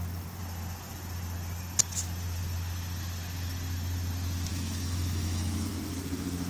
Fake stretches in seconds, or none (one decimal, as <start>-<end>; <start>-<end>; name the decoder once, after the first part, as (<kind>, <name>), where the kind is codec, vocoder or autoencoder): 4.5-5.7 (autoencoder, DAC-VAE)